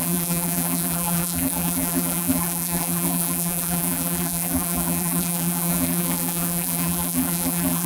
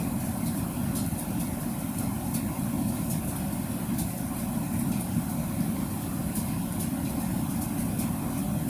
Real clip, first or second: second